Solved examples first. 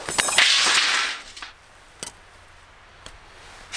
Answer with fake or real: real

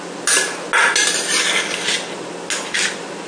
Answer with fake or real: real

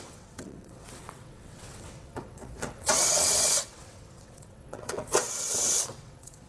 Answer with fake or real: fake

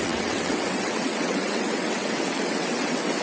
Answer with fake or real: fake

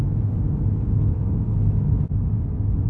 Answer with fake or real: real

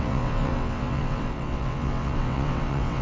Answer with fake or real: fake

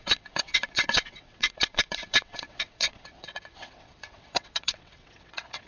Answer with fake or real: fake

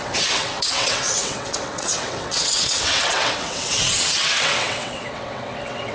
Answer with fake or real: fake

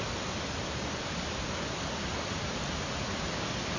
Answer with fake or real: real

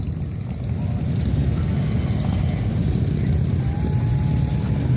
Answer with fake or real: real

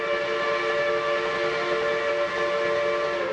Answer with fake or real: real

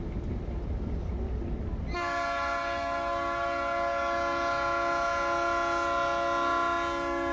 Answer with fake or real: real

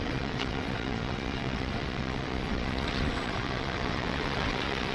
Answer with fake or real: fake